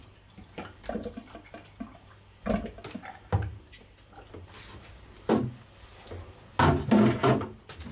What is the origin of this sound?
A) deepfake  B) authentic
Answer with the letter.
B